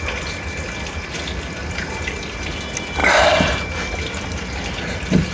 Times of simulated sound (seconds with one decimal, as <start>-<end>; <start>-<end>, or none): none